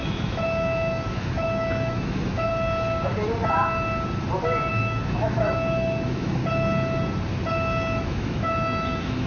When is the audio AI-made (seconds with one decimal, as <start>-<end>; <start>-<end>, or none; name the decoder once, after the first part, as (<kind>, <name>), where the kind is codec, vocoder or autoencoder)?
0.0-2.5 (autoencoder, DAC-VAE); 4.7-6.4; 8.0-9.3